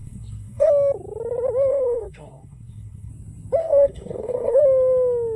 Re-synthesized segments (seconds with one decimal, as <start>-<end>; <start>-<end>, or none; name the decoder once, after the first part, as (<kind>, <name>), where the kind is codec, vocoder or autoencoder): 0.0-0.7 (codec, SNAC); 1.7-3.1; 3.6-4.6

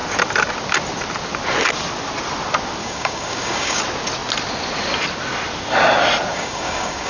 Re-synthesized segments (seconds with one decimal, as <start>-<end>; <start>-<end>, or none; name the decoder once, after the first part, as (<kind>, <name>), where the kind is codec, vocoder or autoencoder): 2.8-3.8 (codec, DAC); 6.3-7.1

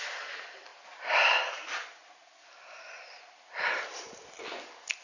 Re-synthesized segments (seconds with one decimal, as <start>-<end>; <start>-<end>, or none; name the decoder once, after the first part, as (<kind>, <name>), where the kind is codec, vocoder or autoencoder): none

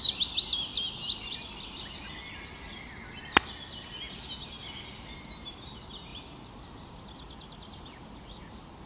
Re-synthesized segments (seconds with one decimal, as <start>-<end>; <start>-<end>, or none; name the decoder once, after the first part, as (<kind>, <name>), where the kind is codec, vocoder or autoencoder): none

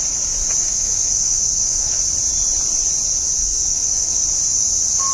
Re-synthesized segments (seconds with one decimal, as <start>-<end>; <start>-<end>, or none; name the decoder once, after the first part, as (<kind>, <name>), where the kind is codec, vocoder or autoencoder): 0.6-2.0 (autoencoder, DAC-VAE); 3.4-4.2

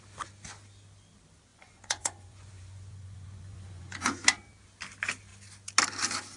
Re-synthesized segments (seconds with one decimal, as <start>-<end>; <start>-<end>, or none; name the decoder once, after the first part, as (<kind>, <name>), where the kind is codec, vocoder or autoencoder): 1.5-4.2 (vocoder, Vocos)

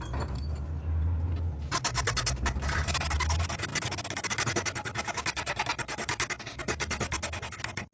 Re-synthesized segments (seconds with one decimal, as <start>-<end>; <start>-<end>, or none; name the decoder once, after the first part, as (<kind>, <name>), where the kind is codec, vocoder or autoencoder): none

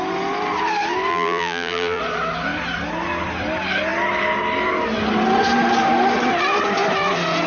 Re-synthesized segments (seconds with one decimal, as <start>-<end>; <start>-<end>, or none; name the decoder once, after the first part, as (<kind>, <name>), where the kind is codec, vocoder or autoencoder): 1.1-2.0 (vocoder, BigVGAN v2)